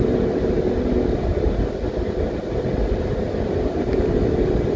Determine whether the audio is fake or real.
real